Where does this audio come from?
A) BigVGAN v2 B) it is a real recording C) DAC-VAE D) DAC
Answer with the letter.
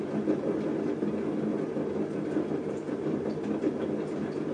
B